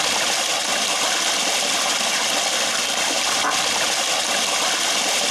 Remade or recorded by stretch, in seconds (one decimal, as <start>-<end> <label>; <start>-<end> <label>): 0.0-0.7 remade; 0.7-3.1 recorded; 3.1-5.3 remade

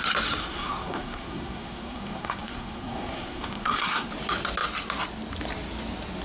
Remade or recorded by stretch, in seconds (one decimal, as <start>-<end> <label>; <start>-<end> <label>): 0.0-0.4 recorded; 0.4-4.1 remade; 4.1-6.2 recorded

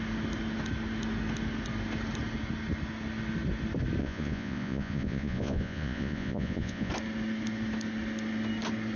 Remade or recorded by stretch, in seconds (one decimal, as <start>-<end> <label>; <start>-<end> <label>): 0.0-4.0 recorded; 4.0-6.9 remade; 6.9-9.0 recorded

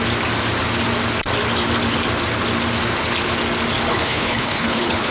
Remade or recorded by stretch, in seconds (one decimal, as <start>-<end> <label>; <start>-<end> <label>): 0.0-3.9 recorded; 3.9-5.1 remade

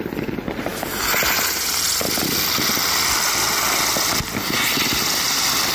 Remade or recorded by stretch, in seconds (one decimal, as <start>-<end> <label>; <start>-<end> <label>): 0.0-5.7 recorded

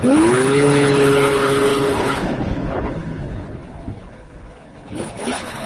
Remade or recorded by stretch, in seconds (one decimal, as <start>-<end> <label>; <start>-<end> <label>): 0.0-5.7 remade

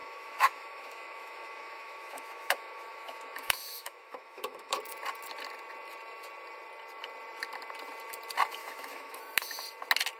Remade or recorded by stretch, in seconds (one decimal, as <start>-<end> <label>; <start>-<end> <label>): 0.0-4.8 remade; 4.8-8.6 recorded; 8.6-9.2 remade; 9.2-10.2 recorded

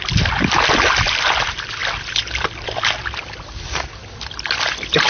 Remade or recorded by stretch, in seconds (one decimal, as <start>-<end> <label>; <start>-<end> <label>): 0.0-5.1 recorded